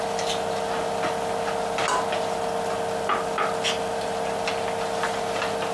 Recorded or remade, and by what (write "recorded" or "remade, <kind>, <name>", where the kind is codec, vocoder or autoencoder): recorded